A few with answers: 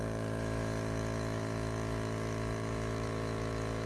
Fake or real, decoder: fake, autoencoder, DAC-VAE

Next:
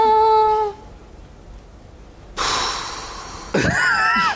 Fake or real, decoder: real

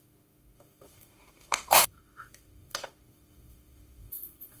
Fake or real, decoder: fake, autoencoder, DAC-VAE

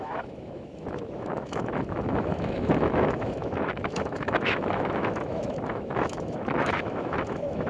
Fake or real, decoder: fake, autoencoder, DAC-VAE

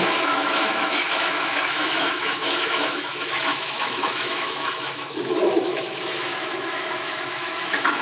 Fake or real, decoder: fake, autoencoder, DAC-VAE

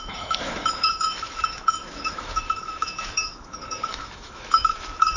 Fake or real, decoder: fake, autoencoder, DAC-VAE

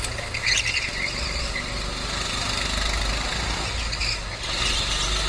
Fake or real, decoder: real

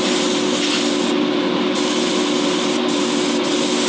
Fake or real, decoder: real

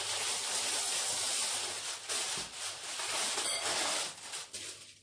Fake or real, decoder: real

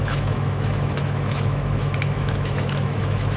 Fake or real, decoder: fake, autoencoder, DAC-VAE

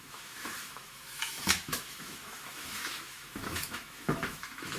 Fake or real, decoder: fake, autoencoder, DAC-VAE